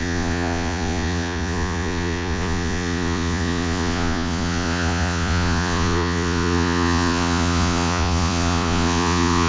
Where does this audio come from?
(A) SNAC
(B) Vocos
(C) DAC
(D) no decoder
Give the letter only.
B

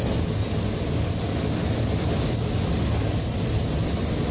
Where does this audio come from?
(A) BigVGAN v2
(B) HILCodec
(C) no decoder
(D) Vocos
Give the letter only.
C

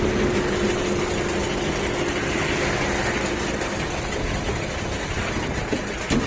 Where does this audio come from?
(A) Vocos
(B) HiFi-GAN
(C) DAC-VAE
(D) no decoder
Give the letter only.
D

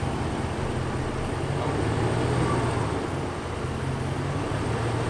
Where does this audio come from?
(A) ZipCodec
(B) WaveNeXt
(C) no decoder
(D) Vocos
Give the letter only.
C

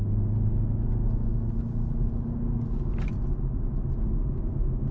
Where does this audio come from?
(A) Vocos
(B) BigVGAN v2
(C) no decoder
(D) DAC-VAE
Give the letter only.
C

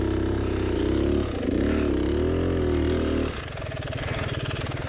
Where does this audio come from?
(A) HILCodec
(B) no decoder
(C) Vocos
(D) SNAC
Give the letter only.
B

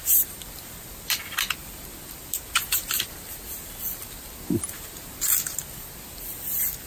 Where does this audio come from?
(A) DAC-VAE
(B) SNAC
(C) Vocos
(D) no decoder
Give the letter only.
D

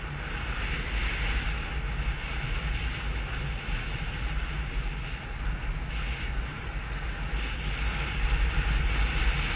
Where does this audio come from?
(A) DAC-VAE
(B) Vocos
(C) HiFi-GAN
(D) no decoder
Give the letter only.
D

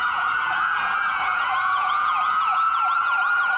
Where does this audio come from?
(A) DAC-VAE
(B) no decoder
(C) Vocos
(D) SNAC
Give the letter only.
C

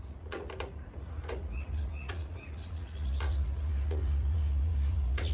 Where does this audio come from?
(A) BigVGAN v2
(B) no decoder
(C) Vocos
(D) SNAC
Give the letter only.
C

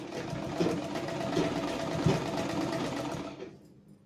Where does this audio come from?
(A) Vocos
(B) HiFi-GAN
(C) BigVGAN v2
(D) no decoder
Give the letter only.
D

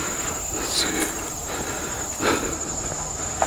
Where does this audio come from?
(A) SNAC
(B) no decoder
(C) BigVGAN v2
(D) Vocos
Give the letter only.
B